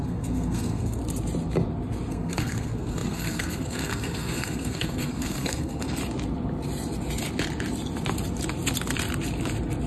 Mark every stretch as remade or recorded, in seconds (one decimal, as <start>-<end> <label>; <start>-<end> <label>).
0.0-1.0 remade; 1.0-2.1 recorded; 2.1-6.0 remade; 6.0-9.9 recorded